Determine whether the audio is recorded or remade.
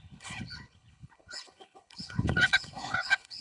remade